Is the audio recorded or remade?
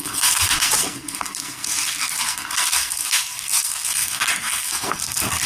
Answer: remade